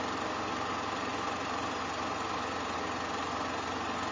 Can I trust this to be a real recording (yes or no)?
yes